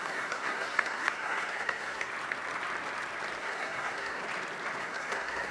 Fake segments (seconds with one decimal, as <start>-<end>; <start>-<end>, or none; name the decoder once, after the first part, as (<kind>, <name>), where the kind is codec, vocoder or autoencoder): 0.0-2.1 (codec, SNAC); 3.4-4.2; 4.8-5.5